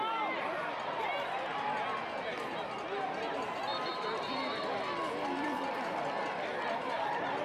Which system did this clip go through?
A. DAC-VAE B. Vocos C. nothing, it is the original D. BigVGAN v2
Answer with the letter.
C